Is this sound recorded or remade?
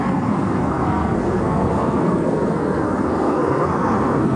remade